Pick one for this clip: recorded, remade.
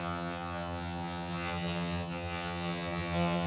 remade